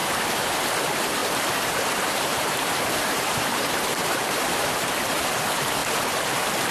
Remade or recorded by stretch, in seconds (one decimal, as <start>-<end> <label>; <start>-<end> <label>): 0.0-5.8 remade; 5.8-6.7 recorded